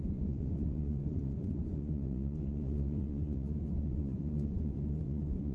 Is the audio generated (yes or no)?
yes